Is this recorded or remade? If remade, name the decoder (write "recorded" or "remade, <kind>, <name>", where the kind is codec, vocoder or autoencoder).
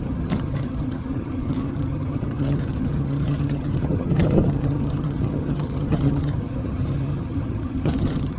remade, vocoder, HiFi-GAN